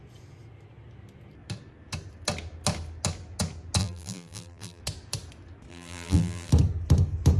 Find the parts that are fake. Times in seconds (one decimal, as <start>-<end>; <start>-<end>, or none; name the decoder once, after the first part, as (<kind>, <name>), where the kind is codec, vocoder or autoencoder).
3.8-4.8 (vocoder, BigVGAN v2); 5.7-6.5